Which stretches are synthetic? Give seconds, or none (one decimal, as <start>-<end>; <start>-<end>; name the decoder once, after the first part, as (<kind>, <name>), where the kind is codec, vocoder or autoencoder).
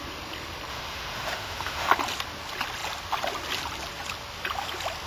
0.7-1.9 (autoencoder, DAC-VAE)